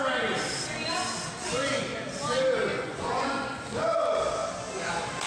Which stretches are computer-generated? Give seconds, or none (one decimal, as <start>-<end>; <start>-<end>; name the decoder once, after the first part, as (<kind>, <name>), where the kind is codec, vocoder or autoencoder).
2.7-3.7 (vocoder, Vocos)